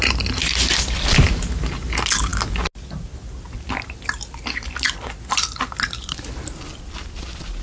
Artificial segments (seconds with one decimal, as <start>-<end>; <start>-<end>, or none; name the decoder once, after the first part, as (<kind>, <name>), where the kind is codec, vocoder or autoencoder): none